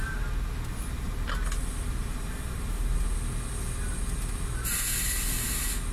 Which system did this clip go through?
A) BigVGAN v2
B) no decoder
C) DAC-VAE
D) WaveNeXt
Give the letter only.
B